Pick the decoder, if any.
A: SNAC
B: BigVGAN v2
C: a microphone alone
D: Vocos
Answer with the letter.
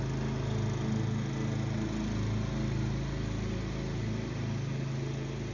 C